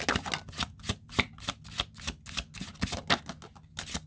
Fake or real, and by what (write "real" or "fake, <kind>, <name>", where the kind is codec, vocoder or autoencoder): real